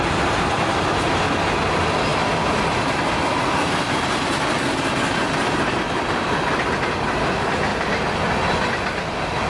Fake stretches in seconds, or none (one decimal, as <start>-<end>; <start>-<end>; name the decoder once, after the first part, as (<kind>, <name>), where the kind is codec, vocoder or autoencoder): none